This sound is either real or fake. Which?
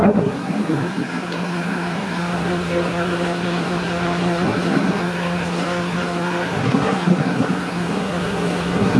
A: fake